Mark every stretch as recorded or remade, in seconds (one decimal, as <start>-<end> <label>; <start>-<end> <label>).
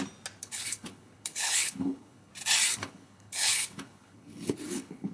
0.0-0.4 recorded; 0.4-2.3 remade; 2.3-2.7 recorded; 2.7-5.1 remade